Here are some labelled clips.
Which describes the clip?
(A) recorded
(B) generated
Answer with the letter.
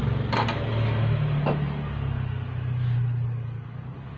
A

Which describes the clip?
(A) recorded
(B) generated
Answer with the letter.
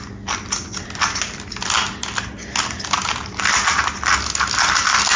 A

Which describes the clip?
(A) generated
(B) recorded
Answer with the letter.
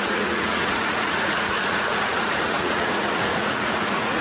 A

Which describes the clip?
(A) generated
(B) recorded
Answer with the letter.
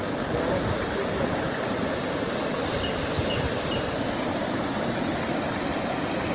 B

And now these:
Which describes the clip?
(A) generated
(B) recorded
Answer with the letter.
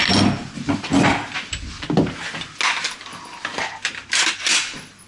B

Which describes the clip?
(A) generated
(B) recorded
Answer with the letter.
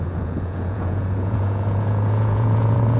A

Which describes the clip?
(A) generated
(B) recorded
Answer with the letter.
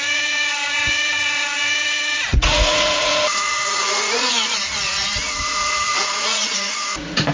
A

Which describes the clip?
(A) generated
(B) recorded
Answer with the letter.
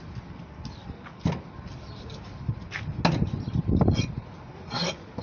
B